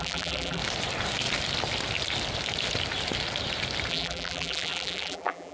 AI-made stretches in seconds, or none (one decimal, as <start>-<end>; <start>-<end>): 0.0-0.6; 3.9-5.5

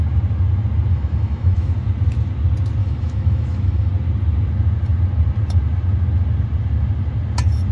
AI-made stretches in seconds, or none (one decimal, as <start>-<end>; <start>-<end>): 0.9-1.7; 2.8-3.9

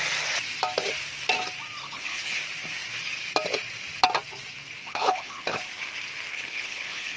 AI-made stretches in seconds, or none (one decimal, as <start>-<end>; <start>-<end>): 1.8-2.4; 4.8-5.6; 6.3-7.2